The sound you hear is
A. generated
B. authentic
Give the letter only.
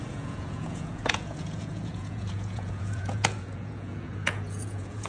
A